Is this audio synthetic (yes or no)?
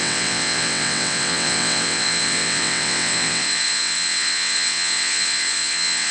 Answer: yes